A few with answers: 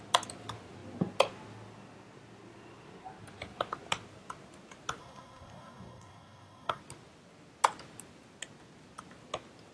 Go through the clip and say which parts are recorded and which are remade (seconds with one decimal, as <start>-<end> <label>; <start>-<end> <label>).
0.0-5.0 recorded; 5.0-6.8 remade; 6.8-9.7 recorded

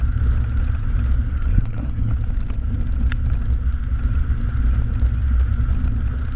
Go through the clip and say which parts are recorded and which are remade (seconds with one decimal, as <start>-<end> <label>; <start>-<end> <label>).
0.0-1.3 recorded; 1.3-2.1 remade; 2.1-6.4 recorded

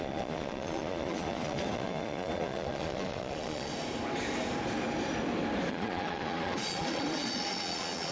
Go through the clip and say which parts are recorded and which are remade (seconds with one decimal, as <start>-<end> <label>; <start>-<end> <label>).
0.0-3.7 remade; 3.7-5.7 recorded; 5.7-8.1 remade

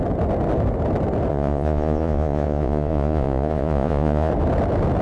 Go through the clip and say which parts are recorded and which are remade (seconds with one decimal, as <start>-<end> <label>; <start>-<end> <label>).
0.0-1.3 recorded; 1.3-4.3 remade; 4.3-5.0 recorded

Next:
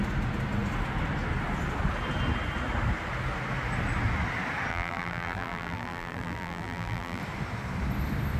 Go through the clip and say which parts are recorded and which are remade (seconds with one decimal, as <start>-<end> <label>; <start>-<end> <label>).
0.0-4.7 recorded; 4.7-7.2 remade; 7.2-8.4 recorded